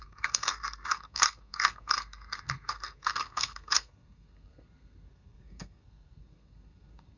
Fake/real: fake